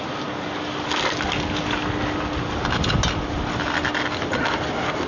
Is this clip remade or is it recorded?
recorded